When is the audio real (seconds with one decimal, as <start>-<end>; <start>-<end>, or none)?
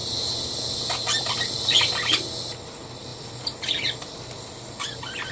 0.0-5.3